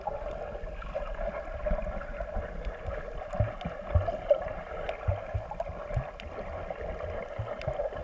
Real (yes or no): yes